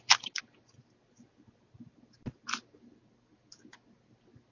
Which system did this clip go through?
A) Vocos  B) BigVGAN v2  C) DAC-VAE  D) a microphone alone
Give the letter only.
D